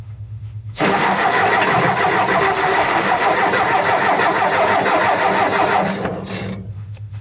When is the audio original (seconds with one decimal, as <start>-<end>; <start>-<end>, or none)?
1.4-2.4; 3.3-6.7